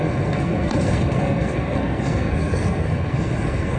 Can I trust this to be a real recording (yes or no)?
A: no